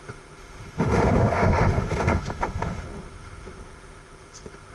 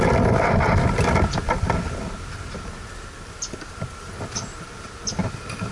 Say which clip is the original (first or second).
second